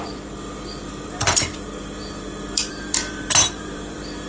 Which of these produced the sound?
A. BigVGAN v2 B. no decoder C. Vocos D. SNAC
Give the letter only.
A